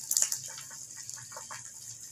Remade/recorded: recorded